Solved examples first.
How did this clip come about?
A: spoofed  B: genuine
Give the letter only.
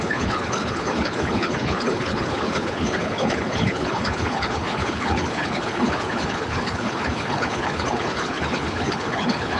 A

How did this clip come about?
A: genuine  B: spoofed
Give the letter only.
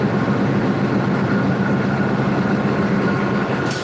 A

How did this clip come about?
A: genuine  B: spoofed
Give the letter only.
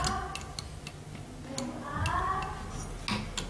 A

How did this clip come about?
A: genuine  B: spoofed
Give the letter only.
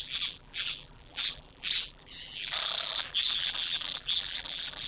B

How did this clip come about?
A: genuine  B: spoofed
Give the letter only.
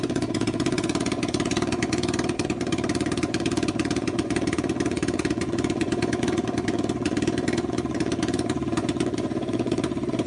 B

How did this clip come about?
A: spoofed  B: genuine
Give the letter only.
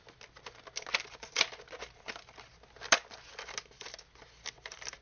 B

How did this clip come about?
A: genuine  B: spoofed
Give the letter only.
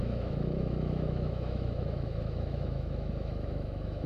B